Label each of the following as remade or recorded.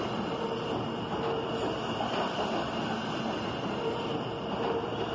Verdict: recorded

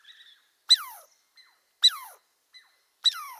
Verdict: recorded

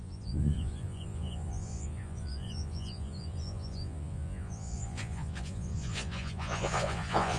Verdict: remade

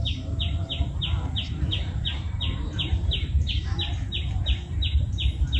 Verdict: remade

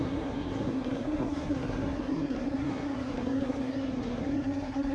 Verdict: remade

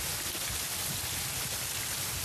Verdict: recorded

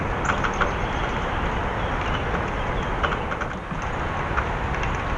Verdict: recorded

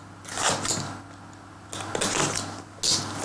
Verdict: recorded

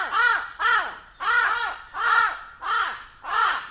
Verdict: recorded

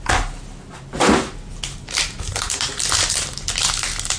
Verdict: recorded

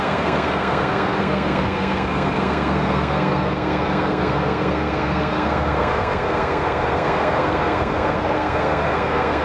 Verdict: remade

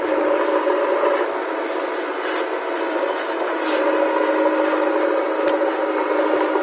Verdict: recorded